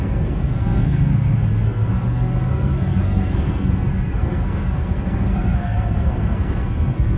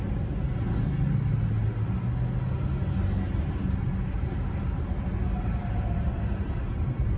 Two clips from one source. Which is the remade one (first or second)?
first